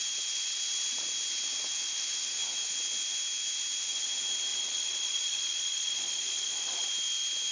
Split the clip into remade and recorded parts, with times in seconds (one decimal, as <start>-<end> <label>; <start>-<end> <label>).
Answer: 0.0-4.5 recorded; 4.5-6.9 remade; 6.9-7.5 recorded